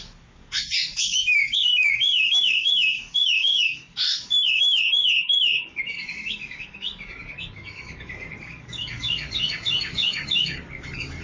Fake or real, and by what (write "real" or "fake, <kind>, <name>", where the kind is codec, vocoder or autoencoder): fake, codec, DAC